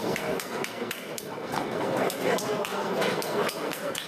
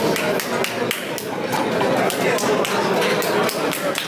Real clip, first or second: second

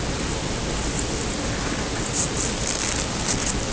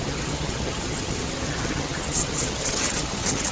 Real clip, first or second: first